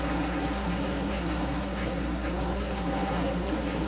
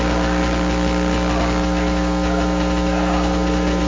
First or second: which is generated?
first